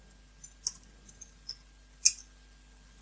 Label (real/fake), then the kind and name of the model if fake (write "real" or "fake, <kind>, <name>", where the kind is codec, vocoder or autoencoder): real